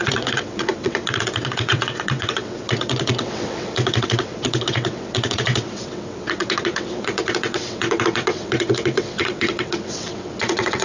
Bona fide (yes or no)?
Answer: no